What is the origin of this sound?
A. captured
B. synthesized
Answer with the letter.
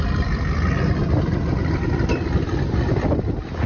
B